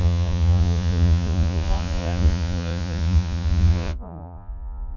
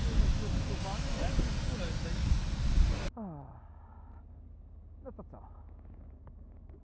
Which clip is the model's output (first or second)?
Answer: first